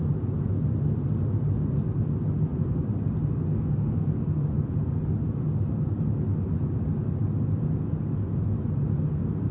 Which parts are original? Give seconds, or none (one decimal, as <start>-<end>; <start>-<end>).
0.0-3.5; 4.1-9.5